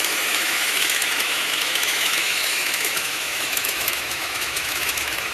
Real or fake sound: fake